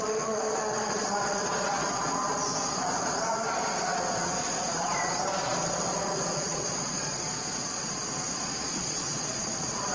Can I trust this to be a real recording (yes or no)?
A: no